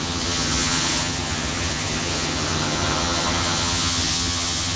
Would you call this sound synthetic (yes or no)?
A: yes